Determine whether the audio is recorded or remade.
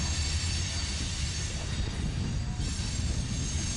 recorded